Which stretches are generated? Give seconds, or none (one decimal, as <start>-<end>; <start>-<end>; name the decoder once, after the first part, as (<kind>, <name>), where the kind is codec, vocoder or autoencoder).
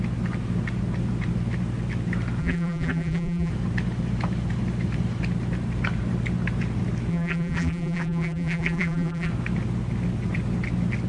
2.4-3.5 (vocoder, BigVGAN v2); 7.1-9.3